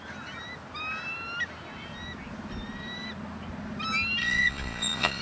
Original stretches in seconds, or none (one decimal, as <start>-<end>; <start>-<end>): 0.0-4.2